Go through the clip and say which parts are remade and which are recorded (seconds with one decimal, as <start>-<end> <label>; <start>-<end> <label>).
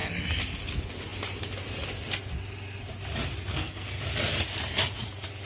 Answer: 0.0-3.5 recorded; 3.5-4.0 remade; 4.0-5.5 recorded